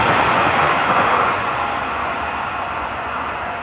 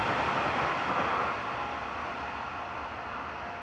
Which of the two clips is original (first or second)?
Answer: second